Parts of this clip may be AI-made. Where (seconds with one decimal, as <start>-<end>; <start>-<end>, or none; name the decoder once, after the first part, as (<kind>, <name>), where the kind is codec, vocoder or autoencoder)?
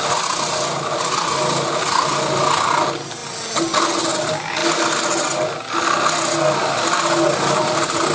none